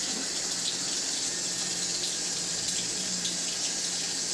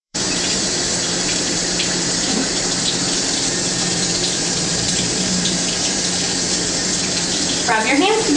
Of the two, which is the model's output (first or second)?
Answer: second